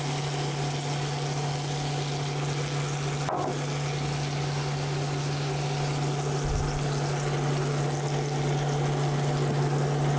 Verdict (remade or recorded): recorded